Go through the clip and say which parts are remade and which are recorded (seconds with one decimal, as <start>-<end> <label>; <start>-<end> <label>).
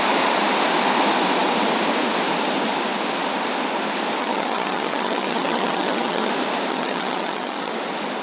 0.0-4.2 recorded; 4.2-6.3 remade; 6.3-6.7 recorded; 6.7-7.7 remade; 7.7-8.2 recorded